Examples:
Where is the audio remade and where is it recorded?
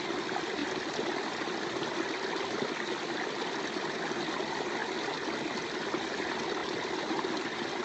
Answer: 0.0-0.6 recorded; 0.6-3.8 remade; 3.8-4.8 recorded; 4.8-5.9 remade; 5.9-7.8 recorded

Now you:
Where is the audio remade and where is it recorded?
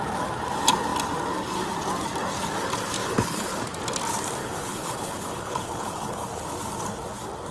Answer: 0.0-3.0 recorded; 3.0-3.6 remade; 3.6-4.4 recorded; 4.4-6.3 remade; 6.3-7.5 recorded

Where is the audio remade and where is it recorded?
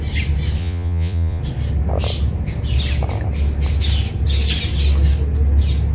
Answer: 0.0-0.6 recorded; 0.6-1.4 remade; 1.4-5.9 recorded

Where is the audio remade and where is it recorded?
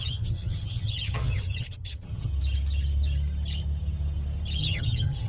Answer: 0.0-2.3 remade; 2.3-4.6 recorded; 4.6-5.3 remade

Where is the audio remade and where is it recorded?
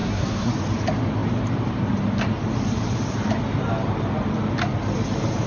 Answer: 0.0-0.5 remade; 0.5-5.5 recorded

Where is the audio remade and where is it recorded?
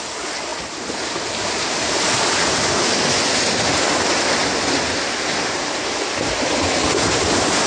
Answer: 0.0-7.7 recorded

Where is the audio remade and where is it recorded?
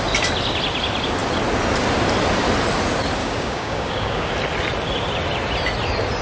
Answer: 0.0-3.2 recorded; 3.2-4.3 remade; 4.3-6.2 recorded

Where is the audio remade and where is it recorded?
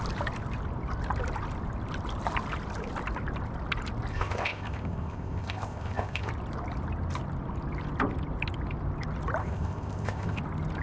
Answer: 0.0-4.1 recorded; 4.1-6.3 remade; 6.3-9.4 recorded; 9.4-10.4 remade; 10.4-10.8 recorded